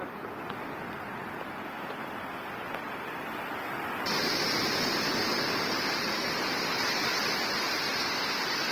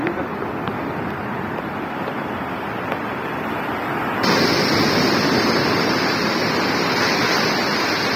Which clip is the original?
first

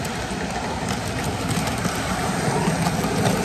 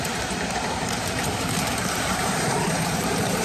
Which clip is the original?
first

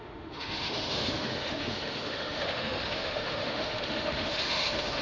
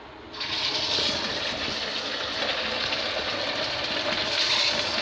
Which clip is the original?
second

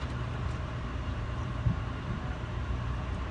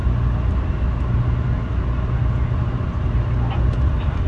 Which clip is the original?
second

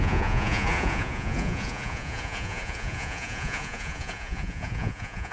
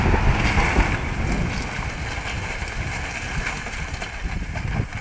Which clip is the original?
second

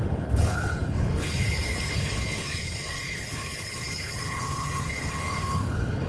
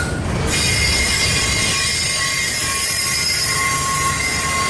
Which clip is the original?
second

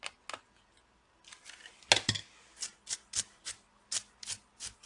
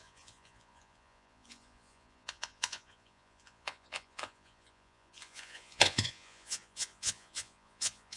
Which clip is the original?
first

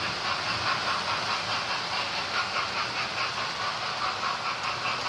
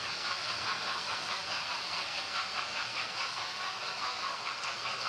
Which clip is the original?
first